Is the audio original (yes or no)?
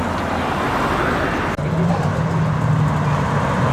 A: yes